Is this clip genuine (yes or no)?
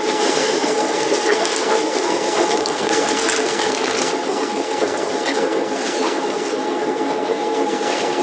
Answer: no